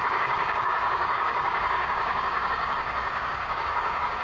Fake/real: fake